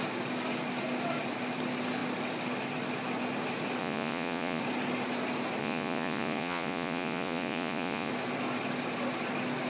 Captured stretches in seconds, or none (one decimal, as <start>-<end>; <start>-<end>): 0.0-3.8; 4.6-5.6; 8.1-9.7

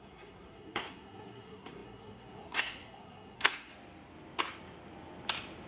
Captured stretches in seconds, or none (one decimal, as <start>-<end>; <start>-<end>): 3.7-5.7

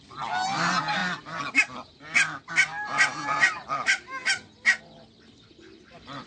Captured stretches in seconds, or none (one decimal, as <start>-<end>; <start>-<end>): 0.0-6.3